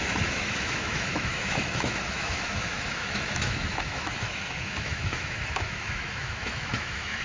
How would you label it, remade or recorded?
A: remade